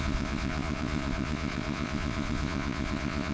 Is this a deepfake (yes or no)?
yes